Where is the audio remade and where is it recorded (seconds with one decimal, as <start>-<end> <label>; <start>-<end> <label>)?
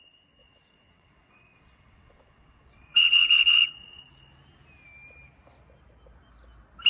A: 0.0-0.4 recorded; 0.4-4.0 remade; 4.0-6.9 recorded